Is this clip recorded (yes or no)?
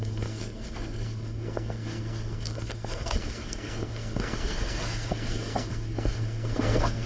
no